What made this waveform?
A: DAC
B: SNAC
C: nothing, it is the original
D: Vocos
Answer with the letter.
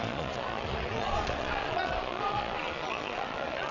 D